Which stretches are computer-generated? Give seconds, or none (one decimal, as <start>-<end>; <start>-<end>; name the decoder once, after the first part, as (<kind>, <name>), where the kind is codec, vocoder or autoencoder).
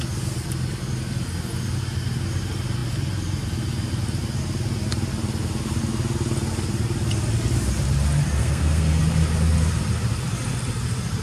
8.4-9.0 (codec, SNAC)